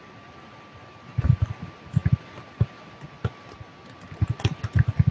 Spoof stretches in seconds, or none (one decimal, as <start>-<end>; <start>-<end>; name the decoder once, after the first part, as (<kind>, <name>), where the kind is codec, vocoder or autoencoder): 0.0-5.1 (vocoder, BigVGAN v2)